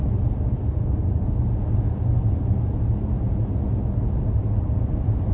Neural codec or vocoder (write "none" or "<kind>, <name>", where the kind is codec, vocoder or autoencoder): none